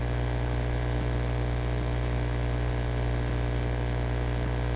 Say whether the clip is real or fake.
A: real